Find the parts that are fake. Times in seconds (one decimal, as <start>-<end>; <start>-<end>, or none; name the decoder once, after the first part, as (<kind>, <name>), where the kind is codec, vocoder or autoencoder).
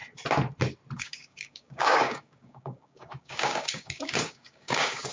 1.0-5.1 (codec, DAC)